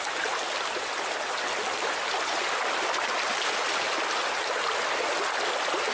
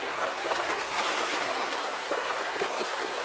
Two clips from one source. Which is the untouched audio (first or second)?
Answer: first